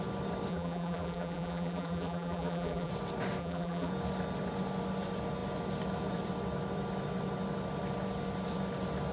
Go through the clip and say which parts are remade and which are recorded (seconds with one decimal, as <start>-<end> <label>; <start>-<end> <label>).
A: 0.0-0.5 recorded; 0.5-2.9 remade; 2.9-3.4 recorded; 3.4-3.9 remade; 3.9-9.1 recorded